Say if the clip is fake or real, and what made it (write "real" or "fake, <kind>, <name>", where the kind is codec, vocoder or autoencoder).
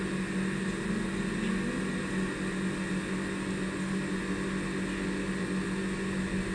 real